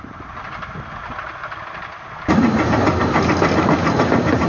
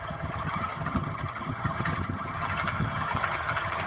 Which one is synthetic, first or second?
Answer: second